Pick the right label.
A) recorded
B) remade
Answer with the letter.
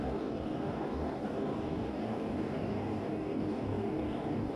B